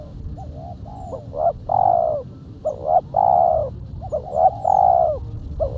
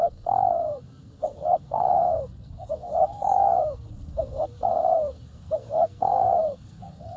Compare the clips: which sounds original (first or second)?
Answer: first